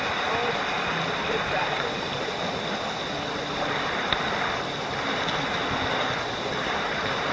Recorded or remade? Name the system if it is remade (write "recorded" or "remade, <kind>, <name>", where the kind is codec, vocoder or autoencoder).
recorded